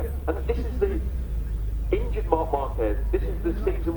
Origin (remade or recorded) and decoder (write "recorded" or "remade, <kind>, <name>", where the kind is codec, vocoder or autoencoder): recorded